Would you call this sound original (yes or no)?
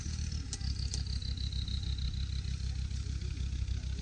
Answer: yes